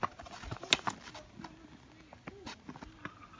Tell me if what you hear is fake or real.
real